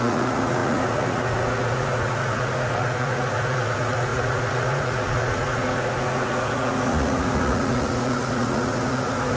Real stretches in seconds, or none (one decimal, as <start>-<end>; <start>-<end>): none